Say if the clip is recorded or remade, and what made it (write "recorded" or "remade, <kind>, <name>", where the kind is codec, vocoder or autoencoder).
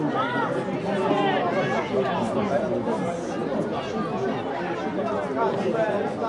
recorded